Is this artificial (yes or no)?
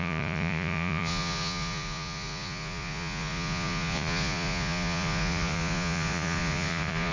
yes